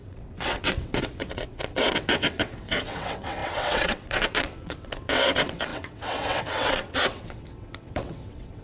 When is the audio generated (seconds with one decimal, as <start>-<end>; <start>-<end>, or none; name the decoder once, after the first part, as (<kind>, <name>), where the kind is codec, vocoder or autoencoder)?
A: 0.0-8.6 (vocoder, WaveNeXt)

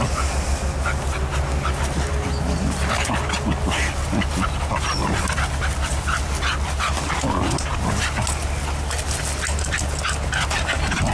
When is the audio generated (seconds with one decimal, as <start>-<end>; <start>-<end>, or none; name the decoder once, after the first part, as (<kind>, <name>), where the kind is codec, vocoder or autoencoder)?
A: none

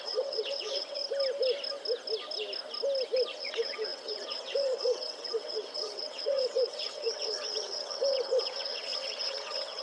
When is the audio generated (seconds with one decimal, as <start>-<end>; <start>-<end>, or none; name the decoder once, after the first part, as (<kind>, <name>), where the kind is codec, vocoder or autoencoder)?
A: 0.0-1.0 (vocoder, WaveNeXt); 3.4-9.8

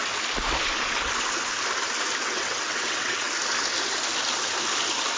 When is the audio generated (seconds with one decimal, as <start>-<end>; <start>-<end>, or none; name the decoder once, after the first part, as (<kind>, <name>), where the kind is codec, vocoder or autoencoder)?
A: 2.2-3.3 (vocoder, WaveNeXt)

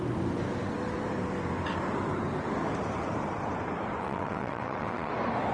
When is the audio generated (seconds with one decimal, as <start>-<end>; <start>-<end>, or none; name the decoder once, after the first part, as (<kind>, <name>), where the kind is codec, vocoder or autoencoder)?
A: 4.0-5.1 (vocoder, WaveNeXt)

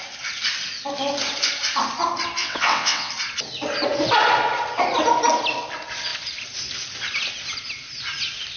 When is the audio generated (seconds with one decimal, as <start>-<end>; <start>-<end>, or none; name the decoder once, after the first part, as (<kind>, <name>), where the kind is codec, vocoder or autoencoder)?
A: 2.4-3.1 (vocoder, WaveNeXt)